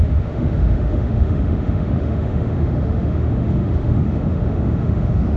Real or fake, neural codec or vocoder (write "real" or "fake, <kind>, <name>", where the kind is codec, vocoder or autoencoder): fake, autoencoder, DAC-VAE